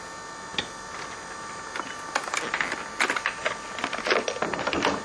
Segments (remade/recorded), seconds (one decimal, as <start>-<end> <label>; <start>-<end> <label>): 0.0-5.0 recorded